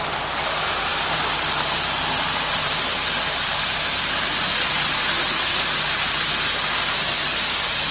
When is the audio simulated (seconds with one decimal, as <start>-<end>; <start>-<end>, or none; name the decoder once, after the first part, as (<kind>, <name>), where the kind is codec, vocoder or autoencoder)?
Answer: 0.0-3.5 (vocoder, BigVGAN v2); 4.4-7.9